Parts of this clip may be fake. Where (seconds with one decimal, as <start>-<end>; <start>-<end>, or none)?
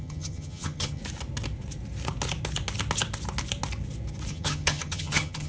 0.0-1.0; 4.3-5.5